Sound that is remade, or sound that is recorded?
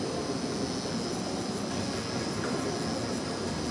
recorded